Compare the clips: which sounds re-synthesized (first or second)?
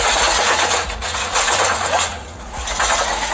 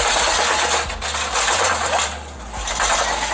first